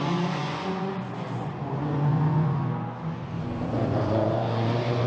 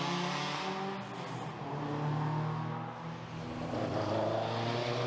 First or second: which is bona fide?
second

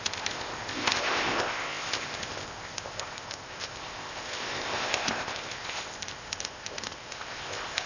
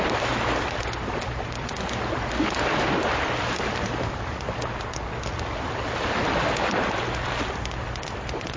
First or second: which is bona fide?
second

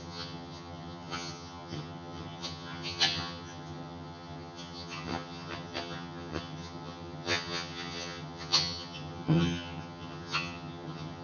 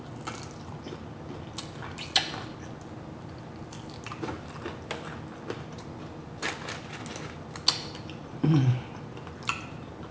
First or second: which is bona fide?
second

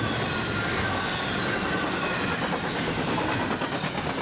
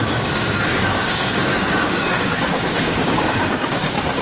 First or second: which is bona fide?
first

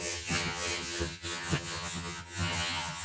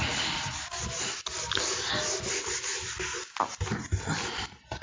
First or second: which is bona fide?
second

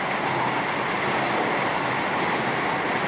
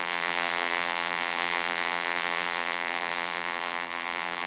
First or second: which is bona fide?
first